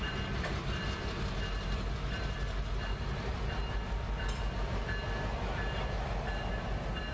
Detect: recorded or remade recorded